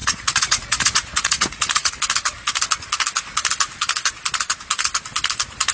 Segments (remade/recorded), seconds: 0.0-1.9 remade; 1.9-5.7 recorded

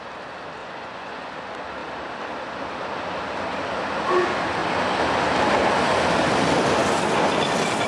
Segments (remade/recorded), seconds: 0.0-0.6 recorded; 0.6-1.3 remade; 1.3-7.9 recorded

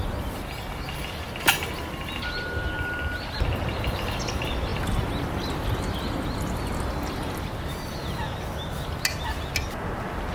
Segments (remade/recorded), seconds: 0.0-10.3 recorded

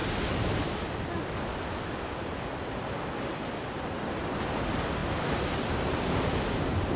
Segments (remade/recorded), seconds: 0.0-7.0 recorded

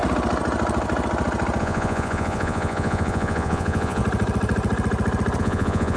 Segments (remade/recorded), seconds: 0.0-1.6 recorded; 1.6-4.0 remade; 4.0-5.4 recorded; 5.4-6.0 remade